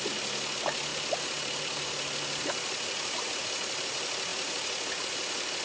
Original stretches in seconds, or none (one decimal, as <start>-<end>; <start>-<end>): 0.0-5.6